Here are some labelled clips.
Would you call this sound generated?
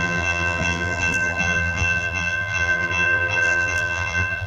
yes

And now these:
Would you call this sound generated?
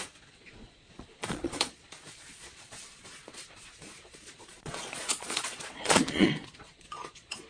yes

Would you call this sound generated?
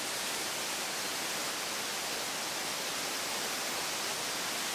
no